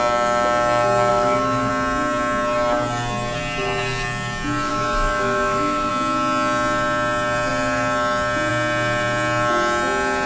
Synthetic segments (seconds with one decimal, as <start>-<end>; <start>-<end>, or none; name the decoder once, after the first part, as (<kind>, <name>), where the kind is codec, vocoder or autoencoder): 1.1-1.7 (autoencoder, DAC-VAE); 4.7-5.9

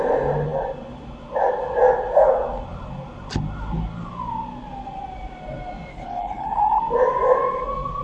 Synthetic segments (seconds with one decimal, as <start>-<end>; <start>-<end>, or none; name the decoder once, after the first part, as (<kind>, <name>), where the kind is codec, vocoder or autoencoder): 5.9-6.8 (codec, HILCodec)

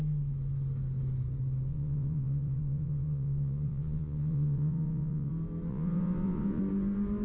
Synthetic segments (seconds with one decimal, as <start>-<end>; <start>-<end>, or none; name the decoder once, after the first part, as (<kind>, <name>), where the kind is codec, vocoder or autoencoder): 1.7-5.3 (vocoder, Vocos); 5.7-6.6

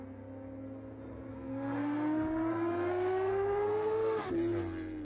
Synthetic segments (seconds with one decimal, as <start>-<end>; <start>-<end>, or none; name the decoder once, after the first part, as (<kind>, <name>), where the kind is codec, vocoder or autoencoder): 1.3-4.3 (codec, SNAC)

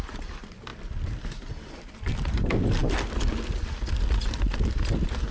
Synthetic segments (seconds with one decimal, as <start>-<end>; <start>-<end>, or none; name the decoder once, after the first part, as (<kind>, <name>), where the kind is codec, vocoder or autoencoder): none

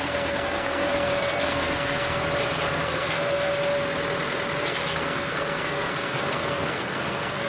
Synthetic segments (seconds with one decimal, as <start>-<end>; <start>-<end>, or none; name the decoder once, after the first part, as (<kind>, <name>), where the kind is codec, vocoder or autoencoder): 0.0-2.2 (codec, SNAC); 2.8-3.5; 4.6-7.5

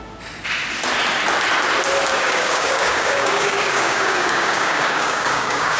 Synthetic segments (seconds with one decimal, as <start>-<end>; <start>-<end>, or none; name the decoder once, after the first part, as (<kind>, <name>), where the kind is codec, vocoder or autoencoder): 2.1-5.8 (codec, DAC)

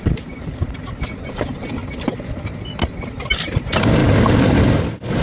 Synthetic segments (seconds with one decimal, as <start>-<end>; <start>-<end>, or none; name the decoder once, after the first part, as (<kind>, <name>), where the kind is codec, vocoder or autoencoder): 4.0-4.6 (vocoder, BigVGAN v2)